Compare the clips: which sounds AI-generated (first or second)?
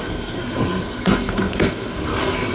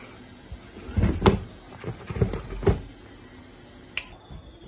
first